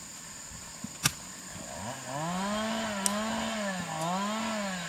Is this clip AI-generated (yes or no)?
no